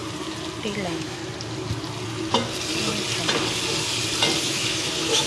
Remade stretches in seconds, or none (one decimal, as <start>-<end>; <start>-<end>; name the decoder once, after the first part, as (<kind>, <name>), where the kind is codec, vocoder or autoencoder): 0.7-1.2 (autoencoder, DAC-VAE); 4.4-5.3